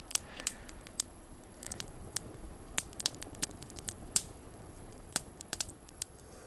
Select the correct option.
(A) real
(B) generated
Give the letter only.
B